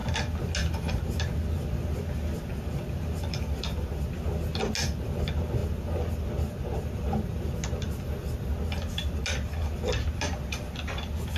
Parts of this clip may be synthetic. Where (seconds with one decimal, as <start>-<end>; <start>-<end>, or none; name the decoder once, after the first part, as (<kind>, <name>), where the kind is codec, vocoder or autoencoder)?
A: none